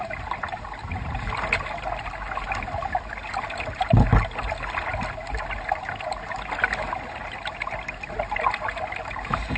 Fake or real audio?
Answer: real